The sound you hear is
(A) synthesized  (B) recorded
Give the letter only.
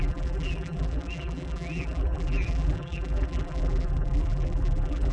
A